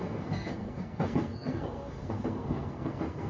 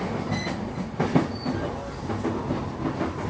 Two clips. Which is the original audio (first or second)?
second